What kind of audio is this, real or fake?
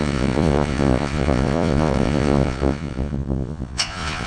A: fake